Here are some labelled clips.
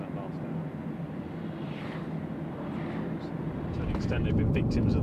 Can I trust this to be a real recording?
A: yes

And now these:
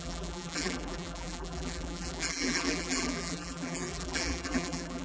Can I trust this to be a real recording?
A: no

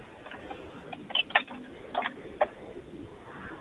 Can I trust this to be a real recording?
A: yes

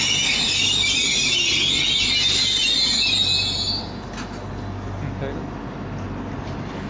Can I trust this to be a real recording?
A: yes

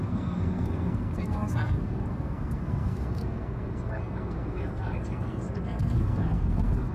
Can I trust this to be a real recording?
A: no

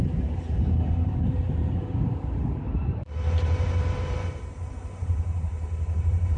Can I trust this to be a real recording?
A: no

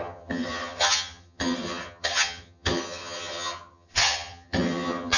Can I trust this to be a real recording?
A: no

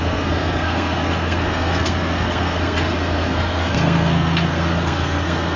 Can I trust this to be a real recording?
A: no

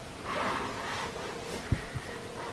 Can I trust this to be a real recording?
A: yes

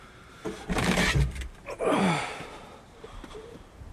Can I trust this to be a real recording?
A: no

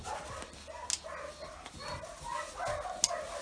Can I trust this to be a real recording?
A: yes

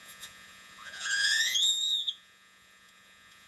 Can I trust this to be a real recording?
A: no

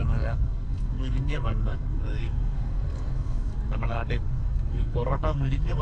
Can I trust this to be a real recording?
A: no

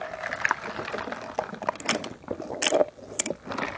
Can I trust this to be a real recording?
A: yes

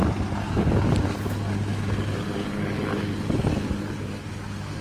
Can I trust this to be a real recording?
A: yes